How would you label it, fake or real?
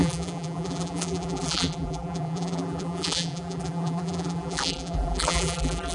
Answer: fake